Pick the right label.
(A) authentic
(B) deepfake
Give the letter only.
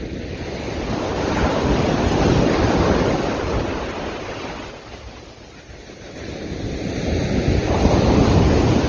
A